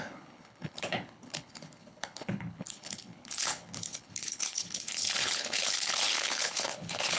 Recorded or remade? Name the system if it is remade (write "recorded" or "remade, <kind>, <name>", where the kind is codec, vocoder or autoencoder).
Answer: remade, codec, HILCodec